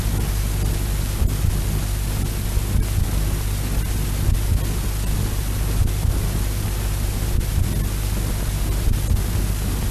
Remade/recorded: recorded